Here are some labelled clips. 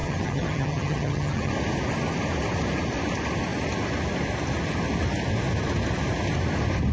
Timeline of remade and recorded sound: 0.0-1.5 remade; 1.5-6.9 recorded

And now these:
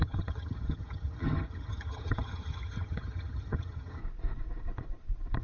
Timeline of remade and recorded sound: 0.0-4.0 remade; 4.0-5.4 recorded